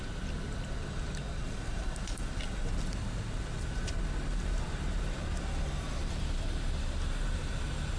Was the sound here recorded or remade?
recorded